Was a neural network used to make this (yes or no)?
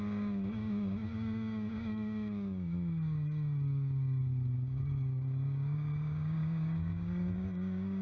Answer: yes